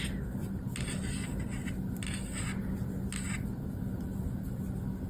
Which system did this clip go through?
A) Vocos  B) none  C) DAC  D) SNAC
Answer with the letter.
B